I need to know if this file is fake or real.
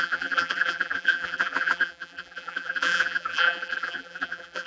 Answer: fake